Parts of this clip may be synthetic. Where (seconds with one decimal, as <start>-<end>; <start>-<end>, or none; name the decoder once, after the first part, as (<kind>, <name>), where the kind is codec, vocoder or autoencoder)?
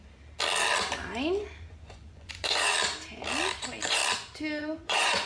1.6-2.7 (vocoder, Vocos); 3.6-4.0; 4.6-5.3